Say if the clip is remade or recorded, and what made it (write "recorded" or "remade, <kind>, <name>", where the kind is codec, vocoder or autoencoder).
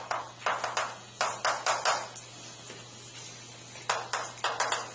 recorded